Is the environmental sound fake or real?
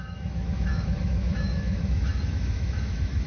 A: fake